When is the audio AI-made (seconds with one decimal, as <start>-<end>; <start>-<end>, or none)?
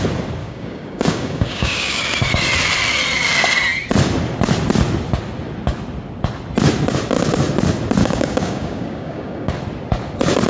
0.4-2.0; 8.0-9.5